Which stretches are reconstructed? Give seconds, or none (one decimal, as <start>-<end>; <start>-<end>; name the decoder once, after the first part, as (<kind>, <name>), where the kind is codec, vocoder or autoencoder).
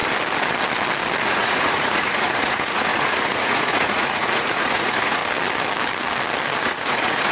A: 1.2-5.2 (vocoder, Vocos); 6.6-7.3